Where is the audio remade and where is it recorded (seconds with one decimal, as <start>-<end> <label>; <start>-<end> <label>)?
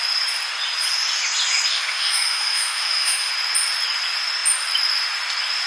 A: 0.0-1.7 recorded; 1.7-3.3 remade; 3.3-5.7 recorded